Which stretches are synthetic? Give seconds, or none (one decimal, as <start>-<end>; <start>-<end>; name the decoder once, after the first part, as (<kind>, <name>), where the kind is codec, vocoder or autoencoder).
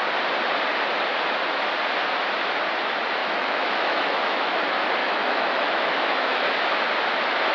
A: 3.2-4.5 (autoencoder, DAC-VAE); 5.0-6.4